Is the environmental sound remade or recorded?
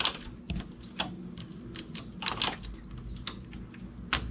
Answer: recorded